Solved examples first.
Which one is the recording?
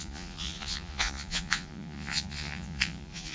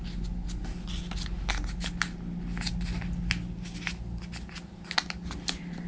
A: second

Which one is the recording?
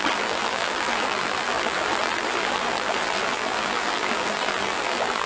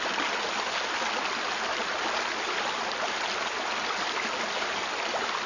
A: second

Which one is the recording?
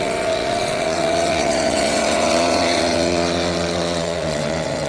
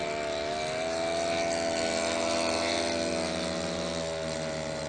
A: second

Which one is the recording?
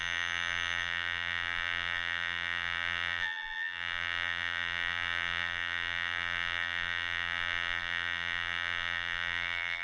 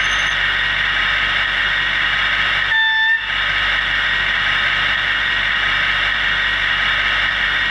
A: second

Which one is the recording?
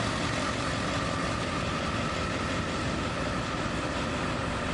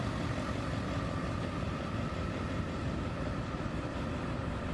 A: first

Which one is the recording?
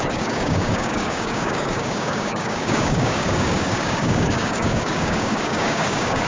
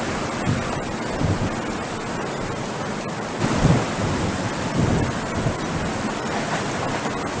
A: second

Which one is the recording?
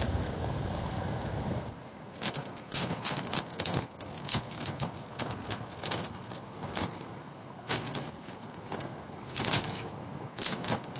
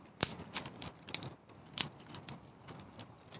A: second